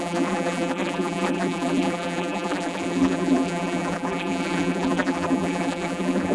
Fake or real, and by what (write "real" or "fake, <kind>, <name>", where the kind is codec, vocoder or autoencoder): fake, vocoder, BigVGAN v2